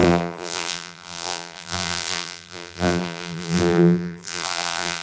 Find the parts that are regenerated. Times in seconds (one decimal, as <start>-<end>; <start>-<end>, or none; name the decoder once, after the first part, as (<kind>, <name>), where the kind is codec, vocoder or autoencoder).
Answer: 0.0-5.0 (vocoder, BigVGAN v2)